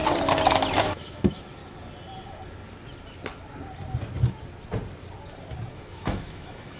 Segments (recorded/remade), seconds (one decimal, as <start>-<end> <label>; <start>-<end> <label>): 0.0-0.8 recorded; 0.8-1.6 remade; 1.6-5.7 recorded; 5.7-6.8 remade